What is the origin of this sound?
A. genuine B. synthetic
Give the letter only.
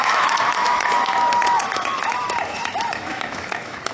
B